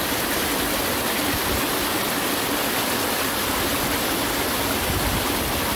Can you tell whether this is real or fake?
real